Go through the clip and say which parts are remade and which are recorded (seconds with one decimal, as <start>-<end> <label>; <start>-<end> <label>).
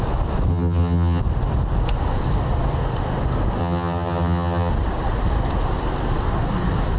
0.0-0.5 recorded; 0.5-1.2 remade; 1.2-3.6 recorded; 3.6-4.7 remade; 4.7-7.0 recorded